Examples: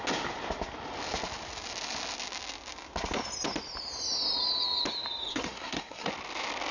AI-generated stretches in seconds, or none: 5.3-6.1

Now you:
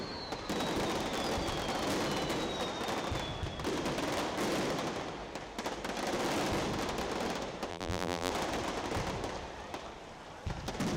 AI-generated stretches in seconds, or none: 7.7-8.3

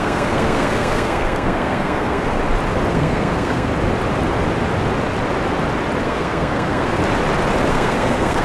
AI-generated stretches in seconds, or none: 0.0-2.4; 2.9-3.7; 6.0-7.0; 7.7-8.4

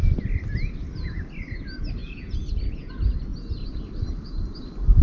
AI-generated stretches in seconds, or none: 2.0-2.9

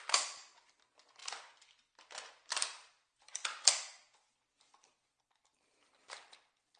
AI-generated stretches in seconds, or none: 1.2-5.3

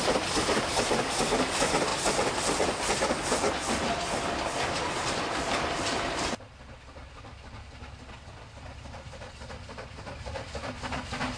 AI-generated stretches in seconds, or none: none

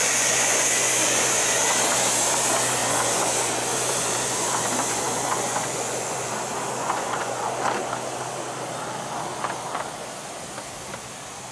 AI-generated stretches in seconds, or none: 0.0-1.6; 2.8-6.3; 6.8-7.5